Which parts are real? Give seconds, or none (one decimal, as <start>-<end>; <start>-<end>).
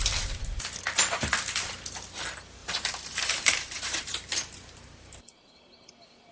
0.0-2.6; 5.6-6.3